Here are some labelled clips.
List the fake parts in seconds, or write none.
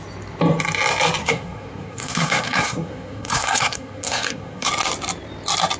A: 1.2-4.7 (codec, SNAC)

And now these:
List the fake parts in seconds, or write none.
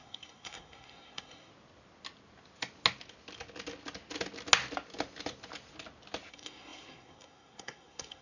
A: 0.0-1.5 (codec, SNAC); 6.3-8.2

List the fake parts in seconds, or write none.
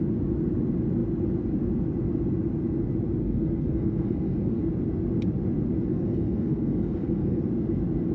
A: 3.2-4.6 (codec, SNAC); 5.9-7.4